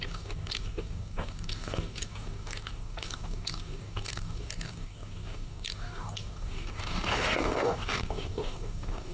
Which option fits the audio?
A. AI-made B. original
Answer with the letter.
A